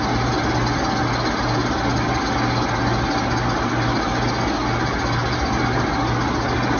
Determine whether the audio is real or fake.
real